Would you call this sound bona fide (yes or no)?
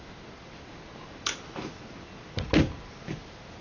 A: yes